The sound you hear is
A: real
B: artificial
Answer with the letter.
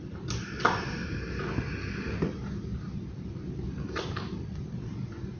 A